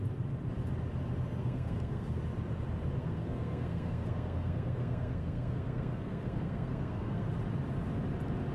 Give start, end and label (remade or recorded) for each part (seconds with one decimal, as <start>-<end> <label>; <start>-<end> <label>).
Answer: 0.0-1.4 recorded; 1.4-2.2 remade; 2.2-3.0 recorded; 3.0-7.3 remade; 7.3-8.5 recorded